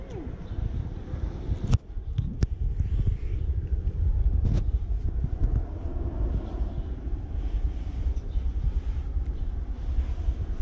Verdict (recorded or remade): recorded